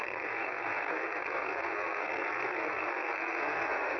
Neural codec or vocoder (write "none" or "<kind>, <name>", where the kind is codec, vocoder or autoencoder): codec, SNAC